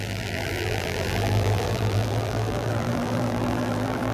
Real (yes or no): no